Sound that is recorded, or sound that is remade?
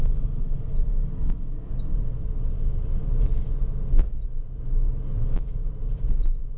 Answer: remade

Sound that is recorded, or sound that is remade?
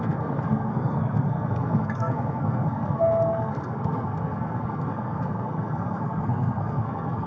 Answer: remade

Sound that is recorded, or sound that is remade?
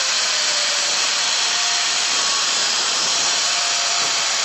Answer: remade